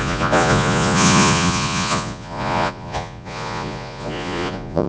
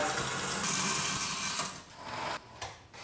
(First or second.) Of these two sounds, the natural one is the second